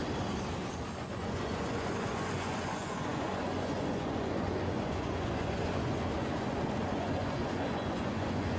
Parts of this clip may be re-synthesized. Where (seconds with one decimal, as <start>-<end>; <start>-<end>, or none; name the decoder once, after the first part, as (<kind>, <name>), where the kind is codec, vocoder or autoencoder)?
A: 1.1-8.6 (vocoder, Vocos)